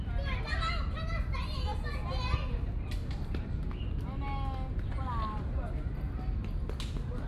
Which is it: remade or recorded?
recorded